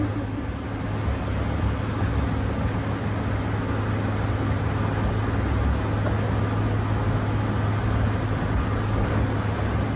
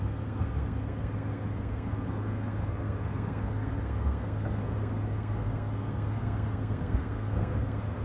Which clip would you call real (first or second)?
first